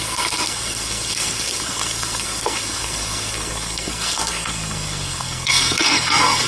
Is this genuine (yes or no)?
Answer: no